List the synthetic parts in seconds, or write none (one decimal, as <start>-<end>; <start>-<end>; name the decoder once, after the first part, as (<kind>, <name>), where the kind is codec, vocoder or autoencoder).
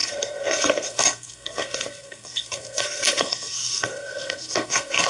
0.0-5.1 (codec, SNAC)